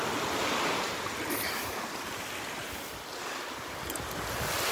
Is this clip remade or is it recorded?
recorded